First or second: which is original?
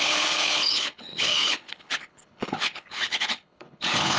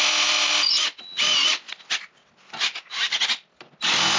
second